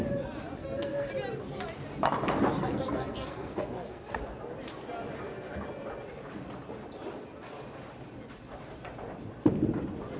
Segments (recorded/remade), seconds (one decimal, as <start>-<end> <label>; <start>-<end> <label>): 0.0-0.6 recorded; 0.6-1.1 remade; 1.1-2.6 recorded; 2.6-4.2 remade; 4.2-10.2 recorded